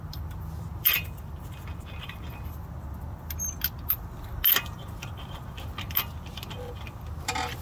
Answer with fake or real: real